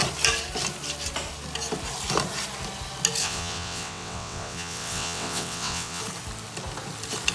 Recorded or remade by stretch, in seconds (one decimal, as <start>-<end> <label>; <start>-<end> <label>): 0.0-3.2 recorded; 3.2-6.0 remade; 6.0-7.3 recorded